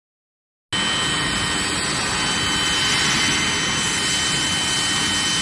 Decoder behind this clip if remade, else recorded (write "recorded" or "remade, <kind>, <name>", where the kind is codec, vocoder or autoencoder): recorded